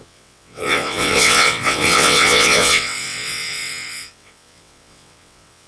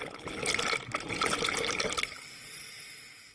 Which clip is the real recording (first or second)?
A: second